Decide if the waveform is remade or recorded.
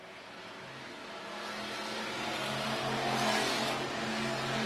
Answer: recorded